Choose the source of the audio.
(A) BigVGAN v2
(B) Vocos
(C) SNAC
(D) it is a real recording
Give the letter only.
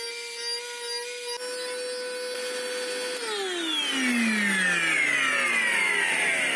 D